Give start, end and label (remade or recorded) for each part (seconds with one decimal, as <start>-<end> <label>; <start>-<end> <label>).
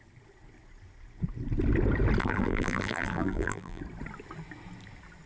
0.0-2.2 recorded; 2.2-3.8 remade; 3.8-5.3 recorded